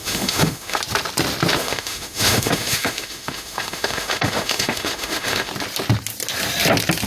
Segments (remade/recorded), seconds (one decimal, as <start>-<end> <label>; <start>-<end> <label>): 0.0-0.8 remade; 0.8-1.5 recorded; 1.5-5.5 remade; 5.5-7.1 recorded